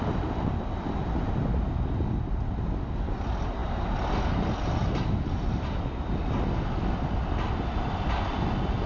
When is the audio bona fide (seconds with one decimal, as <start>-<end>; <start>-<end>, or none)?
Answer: 0.0-8.9